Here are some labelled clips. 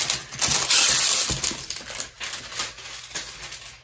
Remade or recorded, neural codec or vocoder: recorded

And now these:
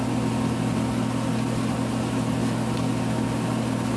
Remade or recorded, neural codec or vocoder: recorded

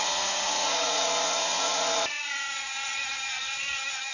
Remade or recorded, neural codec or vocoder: remade, vocoder, Vocos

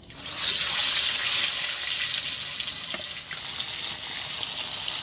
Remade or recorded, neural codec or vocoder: recorded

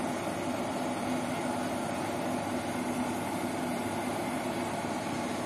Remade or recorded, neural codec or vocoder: recorded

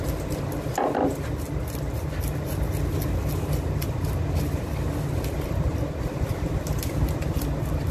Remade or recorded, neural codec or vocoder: recorded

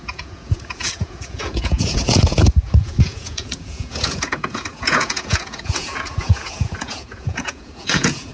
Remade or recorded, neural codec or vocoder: remade, vocoder, Vocos